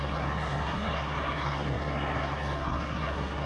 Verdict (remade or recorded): remade